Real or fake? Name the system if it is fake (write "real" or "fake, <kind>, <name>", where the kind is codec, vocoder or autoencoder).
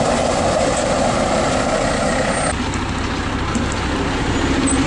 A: real